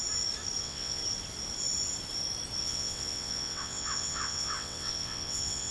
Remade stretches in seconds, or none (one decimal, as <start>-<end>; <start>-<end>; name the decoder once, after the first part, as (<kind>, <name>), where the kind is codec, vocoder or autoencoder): 0.6-1.0 (vocoder, WaveNeXt); 2.6-5.7